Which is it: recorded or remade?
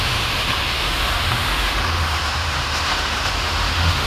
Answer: remade